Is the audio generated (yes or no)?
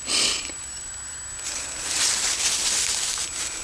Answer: no